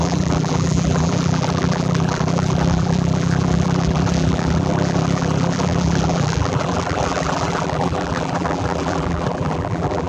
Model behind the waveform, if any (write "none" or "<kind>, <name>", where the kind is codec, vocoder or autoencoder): vocoder, BigVGAN v2